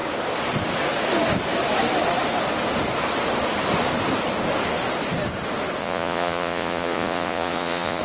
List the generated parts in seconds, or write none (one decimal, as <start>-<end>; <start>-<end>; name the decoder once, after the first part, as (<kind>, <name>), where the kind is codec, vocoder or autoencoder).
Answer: 5.8-8.0 (vocoder, Vocos)